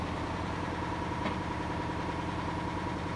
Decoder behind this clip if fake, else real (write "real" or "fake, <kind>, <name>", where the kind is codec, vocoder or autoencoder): real